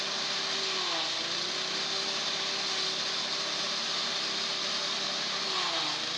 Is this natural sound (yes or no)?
yes